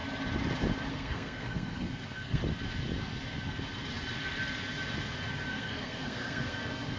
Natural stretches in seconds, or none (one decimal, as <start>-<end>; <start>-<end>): 0.0-0.9; 2.4-5.5